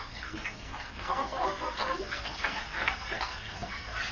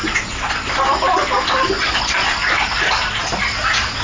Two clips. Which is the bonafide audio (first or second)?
second